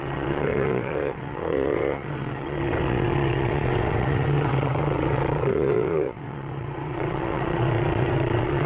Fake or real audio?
fake